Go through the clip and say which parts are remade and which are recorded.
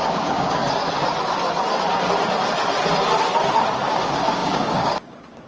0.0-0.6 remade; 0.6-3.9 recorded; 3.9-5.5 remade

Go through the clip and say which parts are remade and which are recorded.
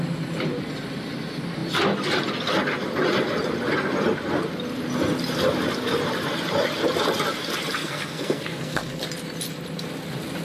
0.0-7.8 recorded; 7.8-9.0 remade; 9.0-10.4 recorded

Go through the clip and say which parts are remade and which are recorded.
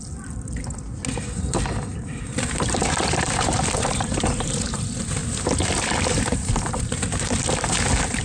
0.0-1.9 recorded; 1.9-4.8 remade; 4.8-5.2 recorded; 5.2-8.2 remade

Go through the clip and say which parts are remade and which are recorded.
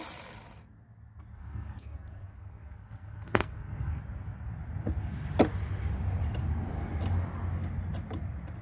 0.0-1.4 recorded; 1.4-4.0 remade; 4.0-8.6 recorded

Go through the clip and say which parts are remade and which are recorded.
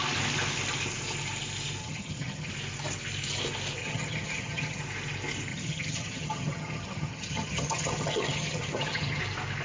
0.0-1.8 recorded; 1.8-2.5 remade; 2.5-3.8 recorded; 3.8-4.8 remade; 4.8-5.5 recorded; 5.5-9.2 remade; 9.2-9.6 recorded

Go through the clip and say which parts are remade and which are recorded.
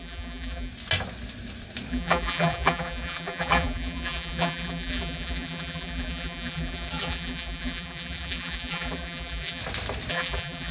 0.0-0.7 remade; 0.7-1.9 recorded; 1.9-9.6 remade; 9.6-10.1 recorded; 10.1-10.7 remade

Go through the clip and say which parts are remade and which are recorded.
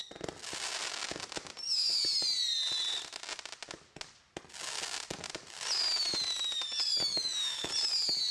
0.0-7.1 recorded; 7.1-7.7 remade; 7.7-8.3 recorded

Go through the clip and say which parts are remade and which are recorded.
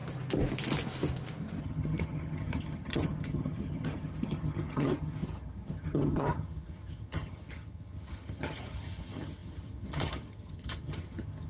0.0-1.6 recorded; 1.6-11.5 remade